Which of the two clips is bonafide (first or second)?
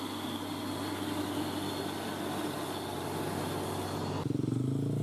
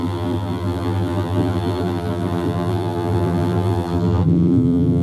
first